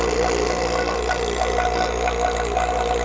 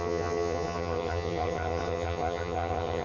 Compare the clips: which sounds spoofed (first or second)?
second